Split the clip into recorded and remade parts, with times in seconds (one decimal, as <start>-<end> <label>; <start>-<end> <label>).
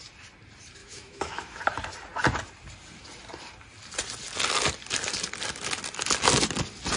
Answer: 0.0-0.8 recorded; 0.8-1.6 remade; 1.6-7.0 recorded